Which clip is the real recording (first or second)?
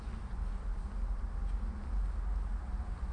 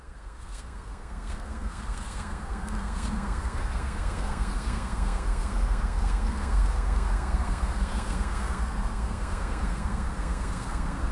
first